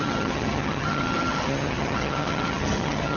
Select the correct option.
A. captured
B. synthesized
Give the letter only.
B